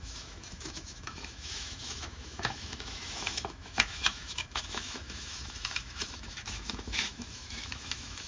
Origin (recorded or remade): remade